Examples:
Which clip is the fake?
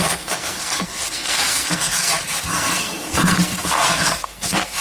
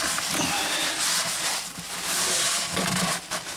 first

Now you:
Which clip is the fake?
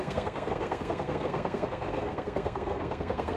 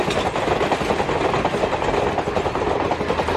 first